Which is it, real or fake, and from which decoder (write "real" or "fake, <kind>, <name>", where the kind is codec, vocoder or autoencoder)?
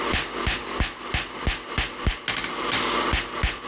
fake, vocoder, BigVGAN v2